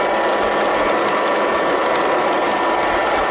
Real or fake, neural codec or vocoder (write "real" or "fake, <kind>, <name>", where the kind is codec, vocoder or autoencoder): real